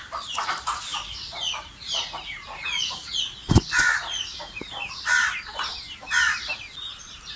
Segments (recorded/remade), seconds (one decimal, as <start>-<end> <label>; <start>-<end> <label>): 0.0-0.9 recorded; 0.9-5.0 remade; 5.0-7.4 recorded